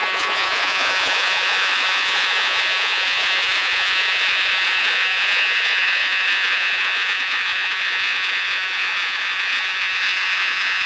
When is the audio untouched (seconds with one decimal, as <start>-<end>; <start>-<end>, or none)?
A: none